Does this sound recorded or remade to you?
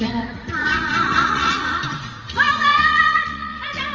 remade